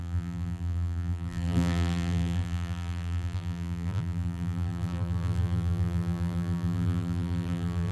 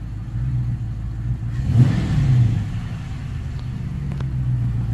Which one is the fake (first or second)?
first